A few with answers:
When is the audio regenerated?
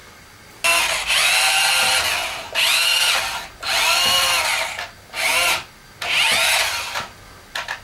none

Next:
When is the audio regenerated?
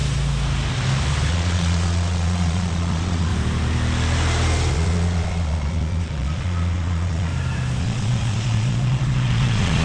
1.3-3.3; 4.7-7.3; 7.8-9.8